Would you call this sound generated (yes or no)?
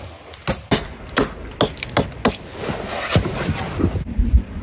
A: no